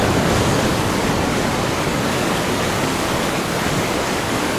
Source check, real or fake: fake